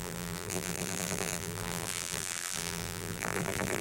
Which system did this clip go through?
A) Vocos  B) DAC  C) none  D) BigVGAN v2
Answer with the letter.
D